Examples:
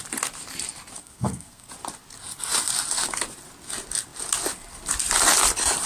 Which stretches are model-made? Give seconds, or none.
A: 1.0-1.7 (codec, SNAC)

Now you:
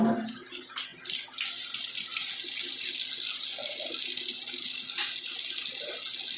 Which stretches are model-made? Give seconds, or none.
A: none

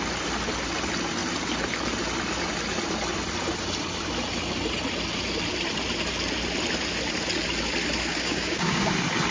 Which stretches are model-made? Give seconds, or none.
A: 8.1-8.9 (codec, DAC)

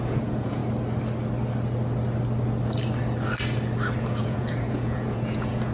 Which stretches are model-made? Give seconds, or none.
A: 0.0-0.6 (vocoder, Vocos); 4.0-5.7

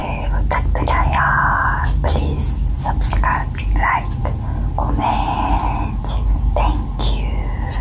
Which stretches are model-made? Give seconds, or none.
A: none

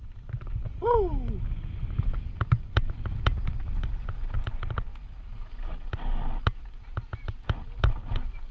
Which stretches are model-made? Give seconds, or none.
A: none

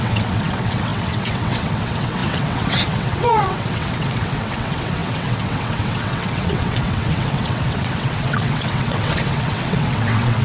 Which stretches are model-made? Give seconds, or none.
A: 0.0-10.4 (vocoder, WaveNeXt)

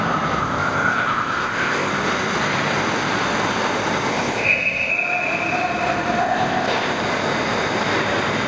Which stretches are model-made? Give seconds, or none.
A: 0.4-1.9 (codec, ZipCodec); 4.1-4.9; 6.2-7.0